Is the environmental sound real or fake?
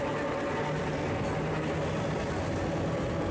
real